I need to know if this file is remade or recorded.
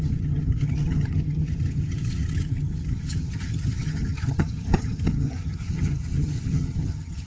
remade